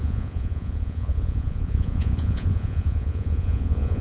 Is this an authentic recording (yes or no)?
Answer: no